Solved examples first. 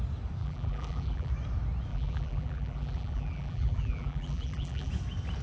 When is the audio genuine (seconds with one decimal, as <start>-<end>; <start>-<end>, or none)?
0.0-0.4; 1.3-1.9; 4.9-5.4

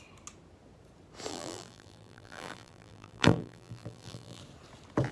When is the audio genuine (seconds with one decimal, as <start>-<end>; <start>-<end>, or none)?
0.0-1.3; 4.4-5.1

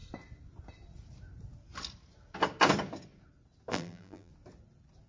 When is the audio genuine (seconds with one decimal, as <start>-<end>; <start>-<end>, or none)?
0.0-3.7; 4.3-5.1

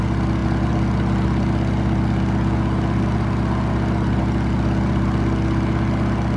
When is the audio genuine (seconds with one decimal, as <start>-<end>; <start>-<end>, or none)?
0.0-6.4

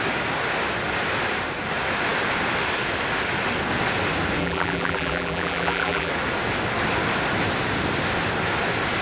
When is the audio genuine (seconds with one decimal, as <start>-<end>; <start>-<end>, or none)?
0.0-4.4; 6.1-9.0

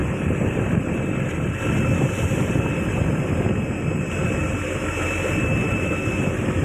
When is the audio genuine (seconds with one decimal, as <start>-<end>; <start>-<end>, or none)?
0.0-6.6